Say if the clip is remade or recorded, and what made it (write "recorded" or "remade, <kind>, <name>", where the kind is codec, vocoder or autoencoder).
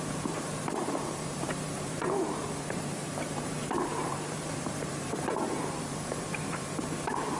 remade, vocoder, BigVGAN v2